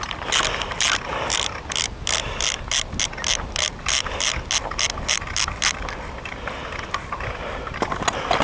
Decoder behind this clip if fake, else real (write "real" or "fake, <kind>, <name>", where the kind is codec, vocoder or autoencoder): real